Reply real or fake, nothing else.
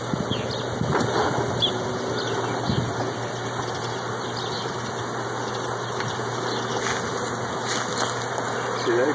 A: real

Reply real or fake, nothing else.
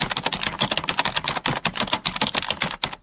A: real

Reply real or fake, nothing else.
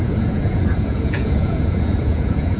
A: fake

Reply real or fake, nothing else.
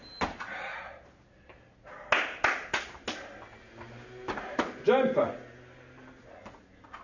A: real